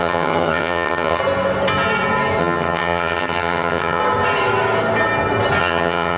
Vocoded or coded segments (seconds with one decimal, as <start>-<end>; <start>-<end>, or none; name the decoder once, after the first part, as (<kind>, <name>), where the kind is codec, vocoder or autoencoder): 0.0-1.2 (vocoder, HiFi-GAN); 2.4-4.0; 5.6-6.2